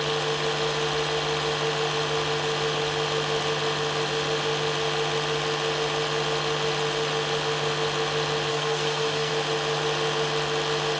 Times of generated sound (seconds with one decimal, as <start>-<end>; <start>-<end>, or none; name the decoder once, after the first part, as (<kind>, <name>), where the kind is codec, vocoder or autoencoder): 8.5-9.3 (codec, SNAC)